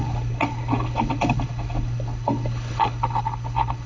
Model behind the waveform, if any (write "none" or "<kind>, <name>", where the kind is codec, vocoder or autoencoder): codec, HILCodec